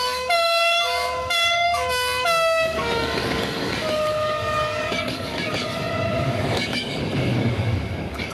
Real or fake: fake